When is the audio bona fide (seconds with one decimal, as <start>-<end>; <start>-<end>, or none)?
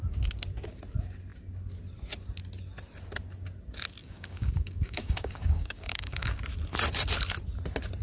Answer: 0.0-4.0; 6.4-8.0